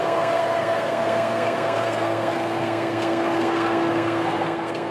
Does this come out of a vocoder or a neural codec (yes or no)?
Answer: yes